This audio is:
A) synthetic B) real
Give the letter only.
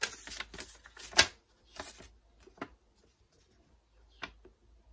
B